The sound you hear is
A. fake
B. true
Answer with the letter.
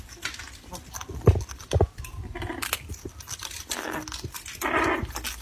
B